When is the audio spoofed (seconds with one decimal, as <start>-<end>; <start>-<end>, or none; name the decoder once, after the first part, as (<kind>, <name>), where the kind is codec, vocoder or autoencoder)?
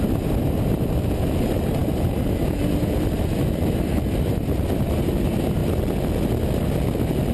none